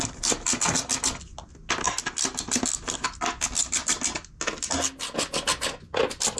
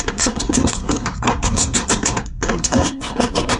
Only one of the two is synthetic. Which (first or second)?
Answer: second